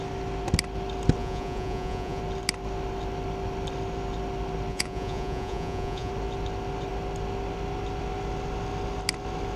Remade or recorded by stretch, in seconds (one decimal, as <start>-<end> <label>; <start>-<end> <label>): 0.0-1.2 recorded; 1.2-2.2 remade; 2.2-4.7 recorded; 4.7-6.1 remade; 6.1-9.6 recorded